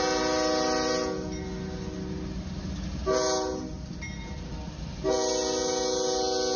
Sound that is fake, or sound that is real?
real